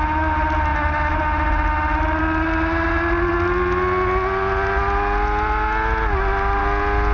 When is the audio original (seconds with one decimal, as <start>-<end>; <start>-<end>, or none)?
0.0-7.1